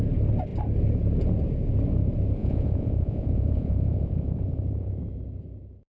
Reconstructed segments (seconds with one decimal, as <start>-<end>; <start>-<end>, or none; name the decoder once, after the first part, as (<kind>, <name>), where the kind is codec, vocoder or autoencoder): 2.4-5.0 (vocoder, Vocos)